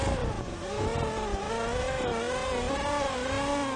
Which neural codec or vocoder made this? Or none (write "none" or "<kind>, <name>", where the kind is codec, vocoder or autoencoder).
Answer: none